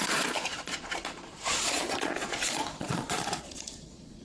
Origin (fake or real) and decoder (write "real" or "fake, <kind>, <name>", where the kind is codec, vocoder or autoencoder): fake, vocoder, Vocos